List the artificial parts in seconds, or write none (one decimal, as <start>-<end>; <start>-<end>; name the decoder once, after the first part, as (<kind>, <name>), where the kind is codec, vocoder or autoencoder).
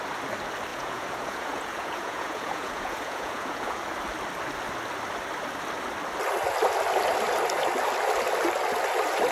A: 0.7-3.8 (vocoder, Vocos)